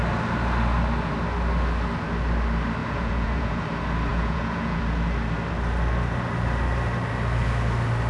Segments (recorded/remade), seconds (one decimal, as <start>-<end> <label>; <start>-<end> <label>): 0.0-2.8 recorded; 2.8-3.6 remade; 3.6-4.1 recorded; 4.1-4.8 remade; 4.8-8.1 recorded